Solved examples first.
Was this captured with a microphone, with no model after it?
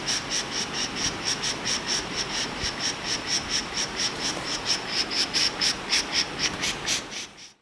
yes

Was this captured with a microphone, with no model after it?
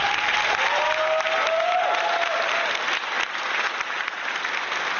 yes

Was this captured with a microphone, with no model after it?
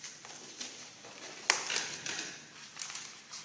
no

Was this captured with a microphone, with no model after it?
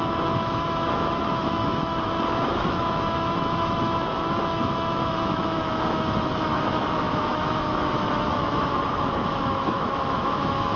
no